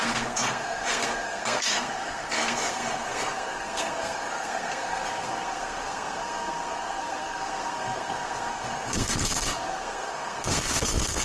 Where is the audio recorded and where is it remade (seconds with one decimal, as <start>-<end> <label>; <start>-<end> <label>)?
0.0-11.2 remade